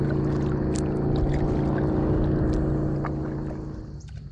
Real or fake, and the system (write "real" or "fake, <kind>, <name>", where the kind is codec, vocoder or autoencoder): real